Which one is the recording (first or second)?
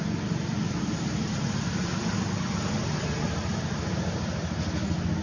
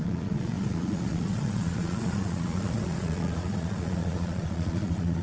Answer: first